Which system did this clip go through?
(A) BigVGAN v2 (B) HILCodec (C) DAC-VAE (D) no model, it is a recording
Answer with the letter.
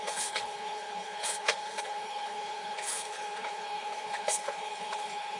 B